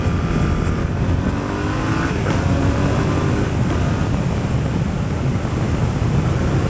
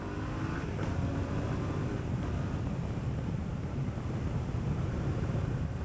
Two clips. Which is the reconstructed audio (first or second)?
second